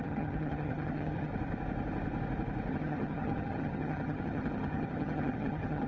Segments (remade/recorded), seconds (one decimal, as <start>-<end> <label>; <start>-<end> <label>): 0.0-1.3 remade; 1.3-2.7 recorded; 2.7-5.9 remade